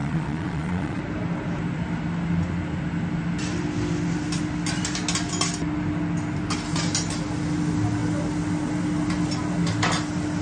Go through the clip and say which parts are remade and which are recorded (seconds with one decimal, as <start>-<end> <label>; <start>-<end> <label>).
0.0-1.0 remade; 1.0-10.4 recorded

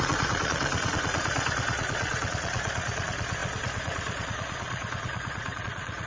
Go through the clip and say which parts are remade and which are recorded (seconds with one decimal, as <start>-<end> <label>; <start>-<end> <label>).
0.0-6.1 remade

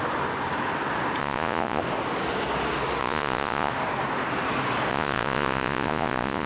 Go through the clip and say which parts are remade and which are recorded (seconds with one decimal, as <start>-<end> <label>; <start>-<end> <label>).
0.0-1.2 recorded; 1.2-1.8 remade; 1.8-3.0 recorded; 3.0-3.7 remade; 3.7-4.9 recorded; 4.9-6.5 remade

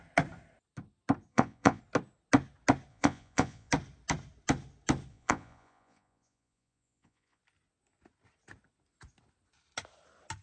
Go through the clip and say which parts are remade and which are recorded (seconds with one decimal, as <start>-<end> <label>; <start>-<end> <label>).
0.0-1.3 recorded; 1.3-1.8 remade; 1.8-2.9 recorded; 2.9-3.7 remade; 3.7-5.1 recorded; 5.1-7.4 remade; 7.4-10.4 recorded

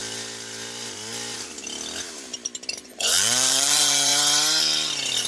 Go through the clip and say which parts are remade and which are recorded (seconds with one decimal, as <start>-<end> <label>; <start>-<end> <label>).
0.0-2.7 recorded; 2.7-4.1 remade; 4.1-5.3 recorded